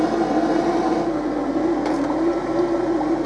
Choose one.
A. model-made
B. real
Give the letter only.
B